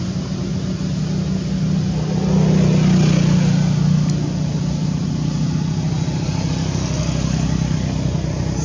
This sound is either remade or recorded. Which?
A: recorded